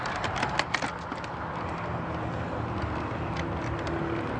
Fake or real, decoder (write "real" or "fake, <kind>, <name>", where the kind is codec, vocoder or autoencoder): real